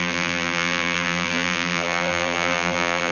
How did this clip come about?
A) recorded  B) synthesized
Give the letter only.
B